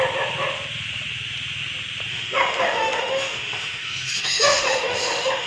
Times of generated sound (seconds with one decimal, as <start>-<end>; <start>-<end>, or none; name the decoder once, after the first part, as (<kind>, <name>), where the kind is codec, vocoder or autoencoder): 2.1-5.5 (autoencoder, DAC-VAE)